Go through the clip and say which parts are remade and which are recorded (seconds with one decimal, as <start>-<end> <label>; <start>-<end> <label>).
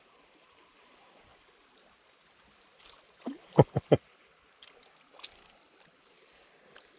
0.0-1.3 recorded; 1.3-5.1 remade; 5.1-7.0 recorded